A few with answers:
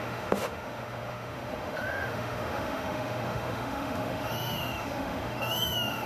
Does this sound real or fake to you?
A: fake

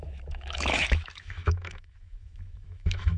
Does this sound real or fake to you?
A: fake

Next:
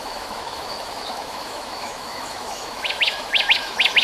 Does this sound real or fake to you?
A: fake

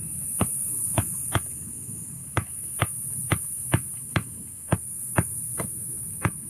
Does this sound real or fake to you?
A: fake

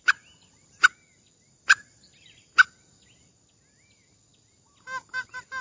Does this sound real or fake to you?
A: real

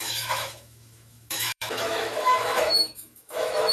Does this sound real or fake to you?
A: fake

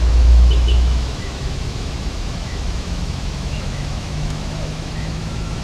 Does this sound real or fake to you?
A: fake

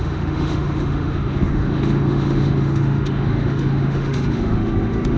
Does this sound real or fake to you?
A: fake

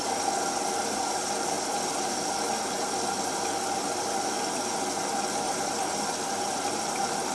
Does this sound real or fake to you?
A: real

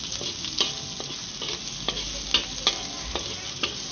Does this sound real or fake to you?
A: real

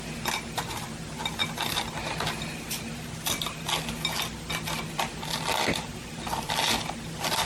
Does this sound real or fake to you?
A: real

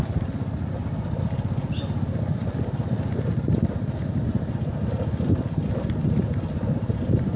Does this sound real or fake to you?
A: real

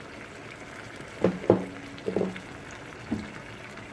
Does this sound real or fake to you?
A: real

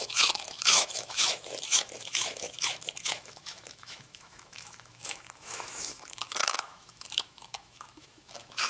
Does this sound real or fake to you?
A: fake